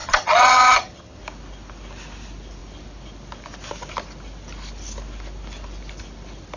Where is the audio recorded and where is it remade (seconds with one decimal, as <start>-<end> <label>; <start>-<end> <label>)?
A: 0.0-1.2 remade; 1.2-6.6 recorded